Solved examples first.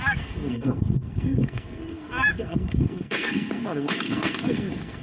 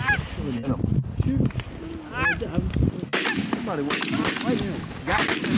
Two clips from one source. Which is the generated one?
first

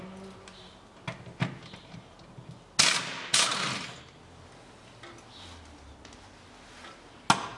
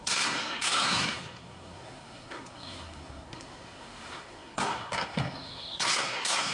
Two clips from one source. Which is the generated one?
second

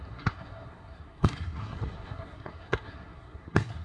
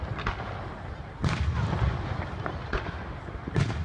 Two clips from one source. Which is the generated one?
first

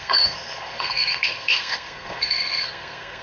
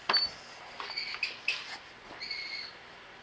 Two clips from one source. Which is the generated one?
first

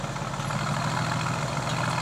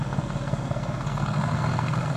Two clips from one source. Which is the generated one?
second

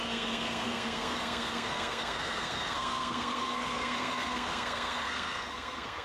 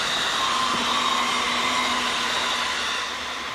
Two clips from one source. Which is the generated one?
first